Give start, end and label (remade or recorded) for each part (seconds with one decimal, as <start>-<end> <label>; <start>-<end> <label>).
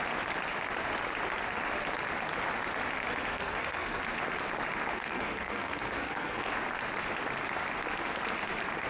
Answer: 0.0-3.3 recorded; 3.3-4.0 remade; 4.0-4.9 recorded; 4.9-6.5 remade; 6.5-8.9 recorded